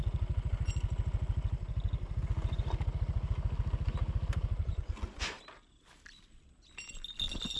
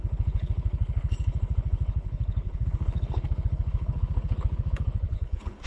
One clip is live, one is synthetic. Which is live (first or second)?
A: first